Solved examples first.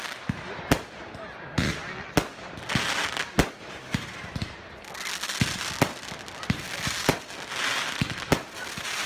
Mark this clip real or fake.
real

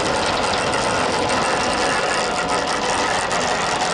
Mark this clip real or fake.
real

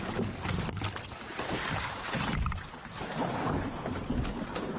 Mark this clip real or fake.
real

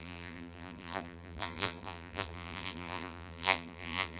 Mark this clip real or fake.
fake